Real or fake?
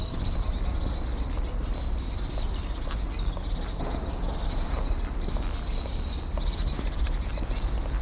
real